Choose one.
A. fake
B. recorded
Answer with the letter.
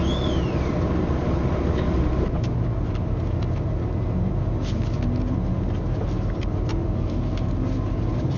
B